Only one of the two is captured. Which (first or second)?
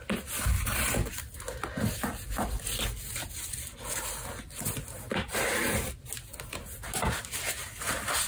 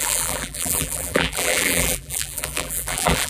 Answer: first